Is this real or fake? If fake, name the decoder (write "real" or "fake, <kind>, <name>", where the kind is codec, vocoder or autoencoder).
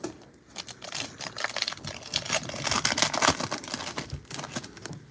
real